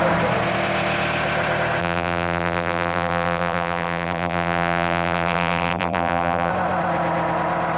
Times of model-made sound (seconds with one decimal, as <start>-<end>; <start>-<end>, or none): 1.8-6.5